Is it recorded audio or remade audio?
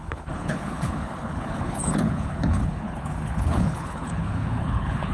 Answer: remade